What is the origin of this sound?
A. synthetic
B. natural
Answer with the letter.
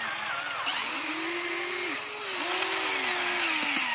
B